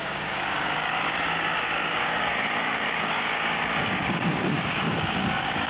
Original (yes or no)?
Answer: no